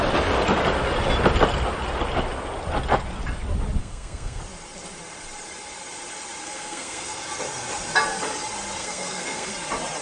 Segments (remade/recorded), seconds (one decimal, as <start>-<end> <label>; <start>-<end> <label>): 0.0-3.8 recorded; 3.8-4.4 remade; 4.4-6.4 recorded; 6.4-7.2 remade; 7.2-8.8 recorded; 8.8-9.5 remade; 9.5-10.0 recorded